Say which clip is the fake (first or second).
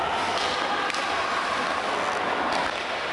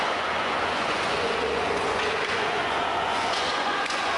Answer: second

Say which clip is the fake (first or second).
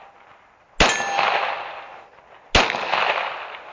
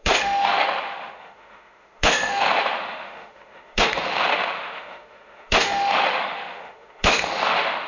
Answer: second